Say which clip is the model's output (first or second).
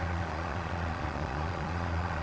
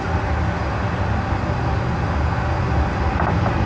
first